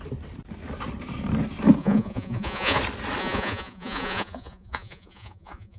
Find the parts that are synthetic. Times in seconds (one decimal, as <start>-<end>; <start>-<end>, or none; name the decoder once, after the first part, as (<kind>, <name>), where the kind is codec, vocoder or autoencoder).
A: 1.8-2.8 (vocoder, Vocos); 3.2-5.8